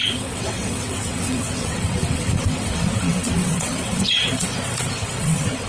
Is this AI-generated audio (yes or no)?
yes